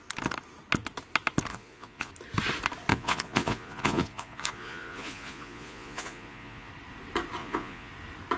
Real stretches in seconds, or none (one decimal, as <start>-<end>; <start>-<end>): 0.0-1.5; 2.1-2.9; 6.7-7.4; 7.9-8.4